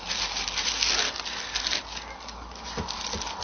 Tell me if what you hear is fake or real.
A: real